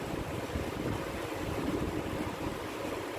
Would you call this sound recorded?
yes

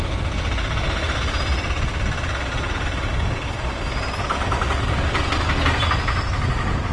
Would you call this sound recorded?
yes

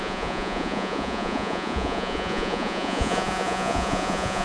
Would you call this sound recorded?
no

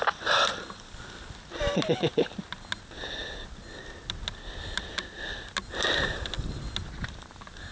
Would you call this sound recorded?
yes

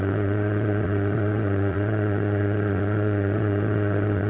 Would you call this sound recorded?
no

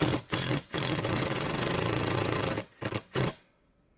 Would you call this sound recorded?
no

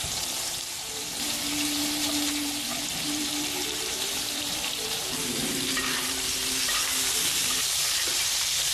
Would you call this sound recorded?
no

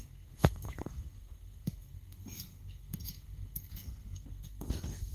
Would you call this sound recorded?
no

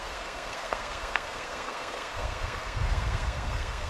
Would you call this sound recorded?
no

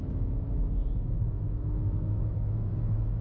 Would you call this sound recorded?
no